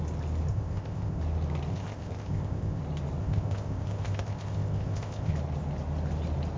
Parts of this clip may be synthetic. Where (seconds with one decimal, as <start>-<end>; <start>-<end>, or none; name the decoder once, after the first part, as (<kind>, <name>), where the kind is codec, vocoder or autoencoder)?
0.5-1.2 (codec, ZipCodec); 1.7-2.8; 3.2-5.3